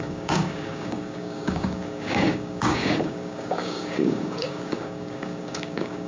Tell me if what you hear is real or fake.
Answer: fake